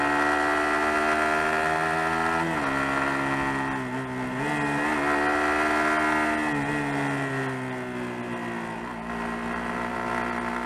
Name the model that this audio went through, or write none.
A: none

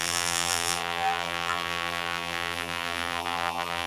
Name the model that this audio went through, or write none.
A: vocoder, BigVGAN v2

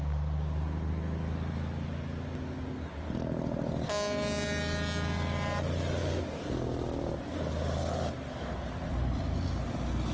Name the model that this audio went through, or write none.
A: none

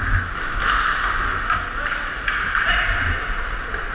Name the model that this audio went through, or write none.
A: none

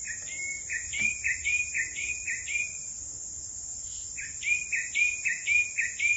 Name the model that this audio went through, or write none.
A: none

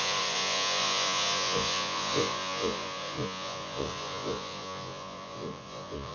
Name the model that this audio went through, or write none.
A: vocoder, Vocos